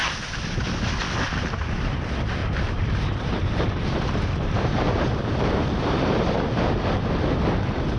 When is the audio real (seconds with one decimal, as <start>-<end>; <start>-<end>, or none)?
0.0-2.4; 7.1-8.0